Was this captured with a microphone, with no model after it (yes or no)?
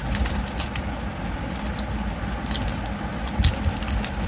yes